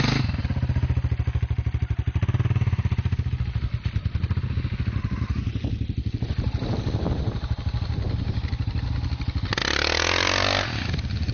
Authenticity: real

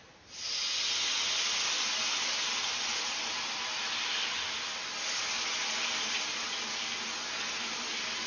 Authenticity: real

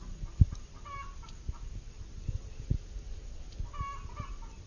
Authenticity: real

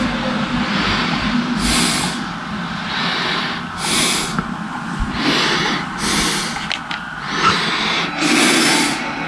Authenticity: real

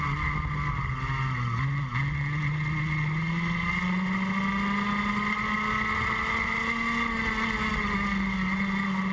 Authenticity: real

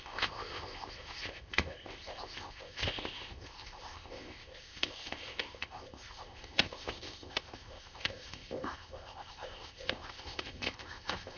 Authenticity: fake